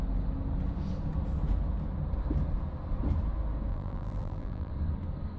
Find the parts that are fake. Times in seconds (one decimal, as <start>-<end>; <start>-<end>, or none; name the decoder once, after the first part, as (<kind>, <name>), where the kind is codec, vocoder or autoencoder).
3.7-4.7 (vocoder, BigVGAN v2)